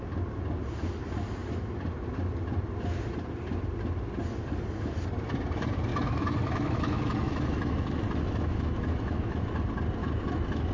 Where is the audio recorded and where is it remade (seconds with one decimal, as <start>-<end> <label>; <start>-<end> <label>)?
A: 0.0-5.9 recorded; 5.9-9.6 remade; 9.6-10.0 recorded; 10.0-10.7 remade